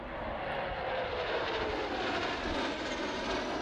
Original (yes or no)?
yes